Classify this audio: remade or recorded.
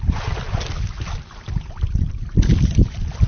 recorded